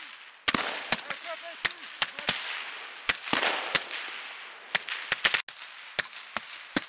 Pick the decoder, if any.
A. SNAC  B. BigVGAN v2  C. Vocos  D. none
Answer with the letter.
D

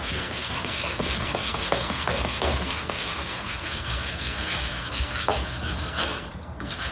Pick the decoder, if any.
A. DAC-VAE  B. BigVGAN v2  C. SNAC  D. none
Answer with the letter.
C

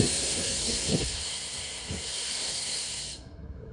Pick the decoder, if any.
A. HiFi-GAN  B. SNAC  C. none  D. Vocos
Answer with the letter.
B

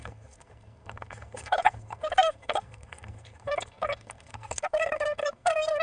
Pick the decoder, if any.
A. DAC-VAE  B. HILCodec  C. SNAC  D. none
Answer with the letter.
C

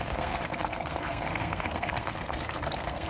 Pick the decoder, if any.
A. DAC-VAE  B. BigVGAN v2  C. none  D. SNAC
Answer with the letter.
D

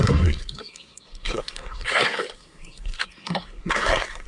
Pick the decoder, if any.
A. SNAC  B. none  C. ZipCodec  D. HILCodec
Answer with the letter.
A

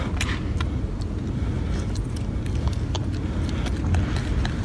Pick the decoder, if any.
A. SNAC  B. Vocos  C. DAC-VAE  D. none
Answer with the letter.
D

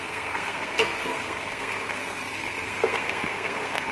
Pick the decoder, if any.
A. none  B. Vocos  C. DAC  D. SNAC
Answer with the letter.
D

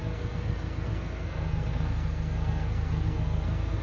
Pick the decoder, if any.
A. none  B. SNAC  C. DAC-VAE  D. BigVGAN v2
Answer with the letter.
B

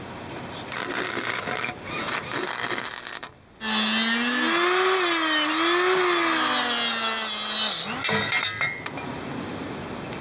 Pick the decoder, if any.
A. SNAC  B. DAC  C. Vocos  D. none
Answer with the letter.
D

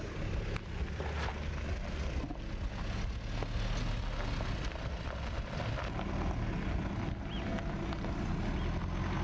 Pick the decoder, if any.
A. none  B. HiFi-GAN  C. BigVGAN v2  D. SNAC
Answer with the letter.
A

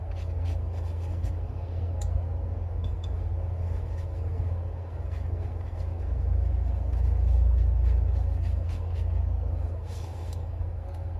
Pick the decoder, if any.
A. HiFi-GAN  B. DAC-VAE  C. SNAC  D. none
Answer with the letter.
C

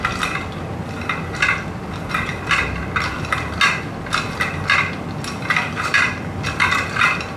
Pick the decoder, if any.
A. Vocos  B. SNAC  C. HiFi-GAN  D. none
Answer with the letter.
D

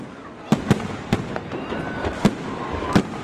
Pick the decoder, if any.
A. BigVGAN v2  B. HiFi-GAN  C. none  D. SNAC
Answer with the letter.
C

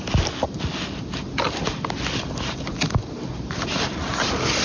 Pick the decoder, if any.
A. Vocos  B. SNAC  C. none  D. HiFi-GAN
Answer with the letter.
C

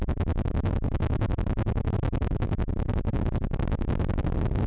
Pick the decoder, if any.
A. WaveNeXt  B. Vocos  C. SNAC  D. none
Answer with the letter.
D